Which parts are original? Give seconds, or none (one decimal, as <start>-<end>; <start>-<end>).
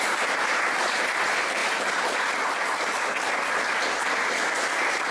1.6-5.1